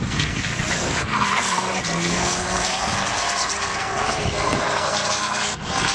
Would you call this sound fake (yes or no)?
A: yes